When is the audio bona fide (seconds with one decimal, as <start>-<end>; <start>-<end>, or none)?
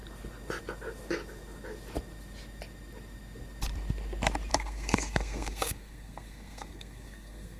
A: 0.0-4.5